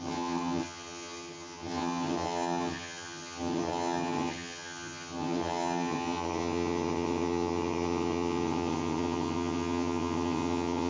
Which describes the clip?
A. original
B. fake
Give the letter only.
B